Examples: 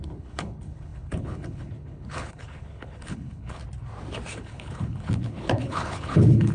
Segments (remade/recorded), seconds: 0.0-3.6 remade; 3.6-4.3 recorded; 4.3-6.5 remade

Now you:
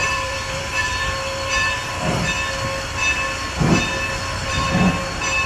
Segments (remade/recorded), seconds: 0.0-1.9 remade; 1.9-4.4 recorded; 4.4-4.9 remade; 4.9-5.5 recorded

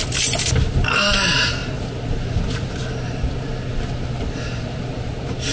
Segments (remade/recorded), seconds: 0.0-1.6 recorded; 1.6-2.8 remade; 2.8-3.7 recorded; 3.7-5.1 remade; 5.1-5.5 recorded